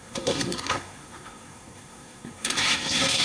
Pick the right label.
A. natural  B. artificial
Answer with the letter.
B